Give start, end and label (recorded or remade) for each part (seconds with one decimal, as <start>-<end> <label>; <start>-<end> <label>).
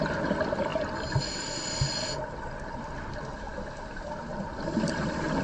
0.0-0.7 recorded; 0.7-1.7 remade; 1.7-5.4 recorded